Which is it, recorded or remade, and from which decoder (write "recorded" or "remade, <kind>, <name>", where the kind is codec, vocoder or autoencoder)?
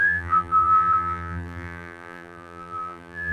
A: remade, vocoder, BigVGAN v2